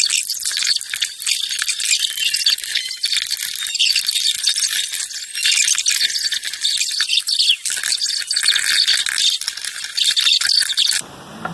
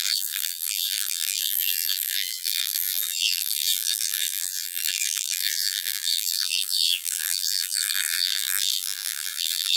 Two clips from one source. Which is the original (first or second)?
first